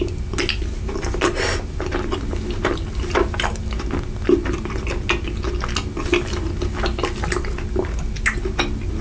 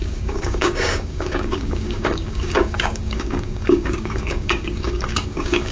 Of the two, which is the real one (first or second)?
first